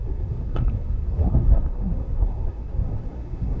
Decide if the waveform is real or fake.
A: fake